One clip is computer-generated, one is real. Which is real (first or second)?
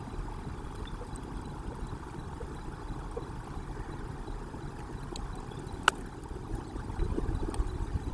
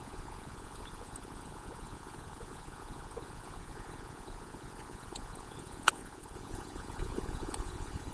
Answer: first